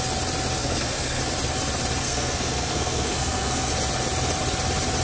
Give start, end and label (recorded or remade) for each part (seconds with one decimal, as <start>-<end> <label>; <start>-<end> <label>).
0.0-0.6 recorded; 0.6-1.2 remade; 1.2-2.0 recorded; 2.0-3.7 remade; 3.7-5.0 recorded